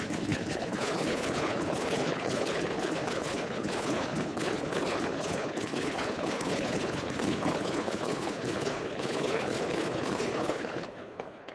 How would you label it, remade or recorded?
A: remade